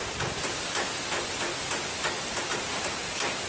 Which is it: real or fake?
real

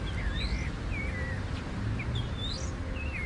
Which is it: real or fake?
real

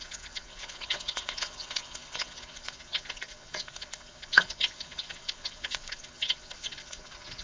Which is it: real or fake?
fake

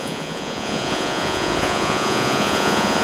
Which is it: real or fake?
fake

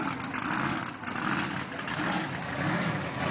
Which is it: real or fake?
real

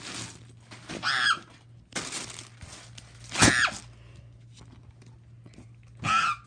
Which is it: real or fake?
real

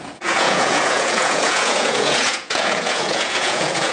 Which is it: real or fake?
fake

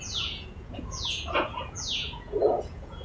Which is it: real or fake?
fake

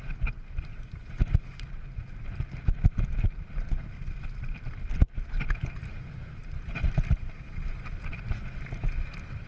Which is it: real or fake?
real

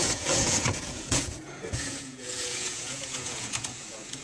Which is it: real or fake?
fake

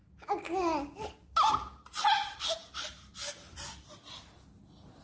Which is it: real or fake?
real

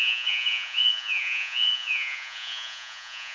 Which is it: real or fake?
fake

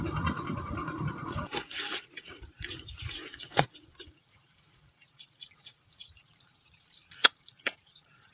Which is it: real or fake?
fake